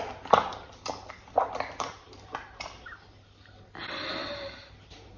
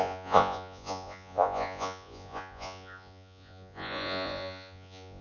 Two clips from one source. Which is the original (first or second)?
first